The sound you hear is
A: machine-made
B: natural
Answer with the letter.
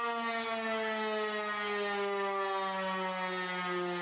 B